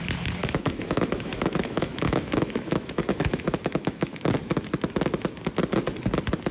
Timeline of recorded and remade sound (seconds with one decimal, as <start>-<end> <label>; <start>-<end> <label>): 0.0-0.4 recorded; 0.4-4.3 remade; 4.3-6.5 recorded

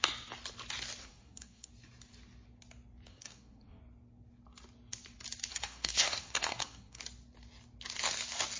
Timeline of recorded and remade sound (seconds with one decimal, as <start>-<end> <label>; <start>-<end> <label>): 0.0-1.0 recorded; 1.0-1.7 remade; 1.7-3.1 recorded; 3.1-3.8 remade; 3.8-5.5 recorded; 5.5-7.0 remade; 7.0-8.6 recorded

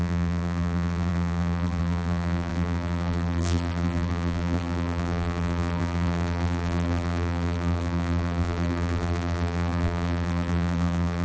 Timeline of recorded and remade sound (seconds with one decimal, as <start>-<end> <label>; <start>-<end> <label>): 0.0-11.2 remade

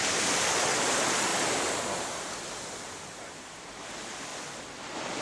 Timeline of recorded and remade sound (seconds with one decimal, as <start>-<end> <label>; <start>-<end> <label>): 0.0-4.3 remade; 4.3-5.2 recorded